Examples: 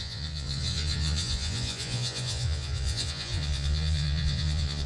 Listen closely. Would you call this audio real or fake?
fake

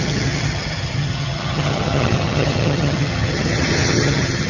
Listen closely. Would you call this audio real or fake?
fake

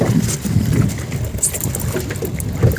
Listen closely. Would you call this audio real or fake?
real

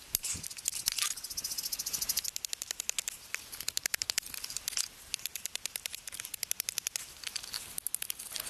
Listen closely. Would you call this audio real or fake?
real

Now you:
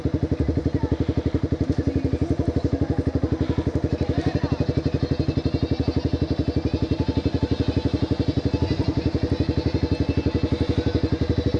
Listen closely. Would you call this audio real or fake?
real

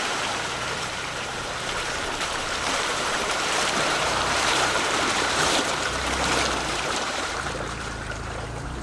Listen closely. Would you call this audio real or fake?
fake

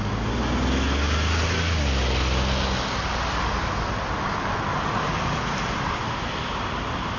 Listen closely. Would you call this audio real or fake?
real